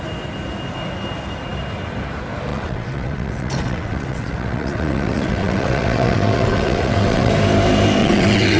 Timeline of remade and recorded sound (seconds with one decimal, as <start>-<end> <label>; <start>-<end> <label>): 0.0-2.5 recorded; 2.5-7.3 remade; 7.3-8.0 recorded; 8.0-8.6 remade